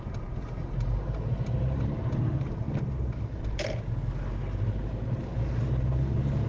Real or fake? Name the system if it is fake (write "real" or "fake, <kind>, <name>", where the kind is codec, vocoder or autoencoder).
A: real